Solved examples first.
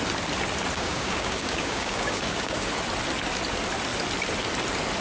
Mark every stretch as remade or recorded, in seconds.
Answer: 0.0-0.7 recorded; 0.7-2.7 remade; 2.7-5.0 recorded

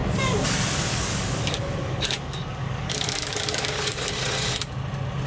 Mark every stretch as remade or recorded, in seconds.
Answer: 0.0-0.9 recorded; 0.9-4.1 remade; 4.1-5.3 recorded

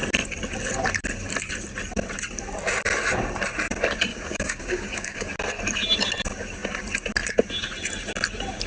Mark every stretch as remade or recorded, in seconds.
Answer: 0.0-4.1 recorded; 4.1-5.3 remade; 5.3-8.7 recorded

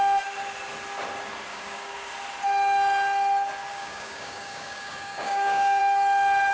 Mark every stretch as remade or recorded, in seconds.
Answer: 0.0-1.5 recorded; 1.5-2.1 remade; 2.1-3.7 recorded; 3.7-5.8 remade; 5.8-6.5 recorded

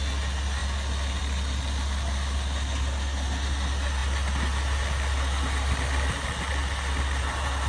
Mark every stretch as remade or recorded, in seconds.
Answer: 0.0-7.7 recorded

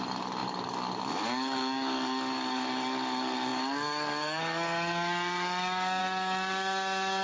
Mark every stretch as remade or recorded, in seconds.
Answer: 0.0-7.2 remade